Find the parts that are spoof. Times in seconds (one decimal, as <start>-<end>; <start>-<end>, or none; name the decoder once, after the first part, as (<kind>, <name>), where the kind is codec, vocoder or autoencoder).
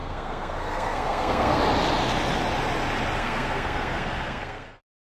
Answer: 0.0-1.6 (codec, SNAC); 3.2-5.1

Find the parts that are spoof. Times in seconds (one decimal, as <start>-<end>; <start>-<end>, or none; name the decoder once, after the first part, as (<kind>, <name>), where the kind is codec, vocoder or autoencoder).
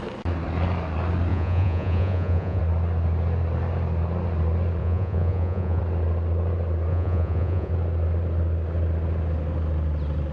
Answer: 1.3-2.6 (vocoder, Vocos); 4.8-5.8; 6.9-7.7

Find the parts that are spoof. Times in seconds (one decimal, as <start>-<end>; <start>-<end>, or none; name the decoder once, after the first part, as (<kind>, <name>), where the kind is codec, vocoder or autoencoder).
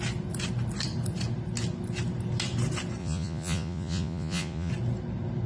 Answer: 3.0-4.7 (vocoder, Vocos)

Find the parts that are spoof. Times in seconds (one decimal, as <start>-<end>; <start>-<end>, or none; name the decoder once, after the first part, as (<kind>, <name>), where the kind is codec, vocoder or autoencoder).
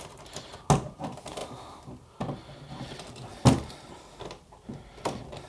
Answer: none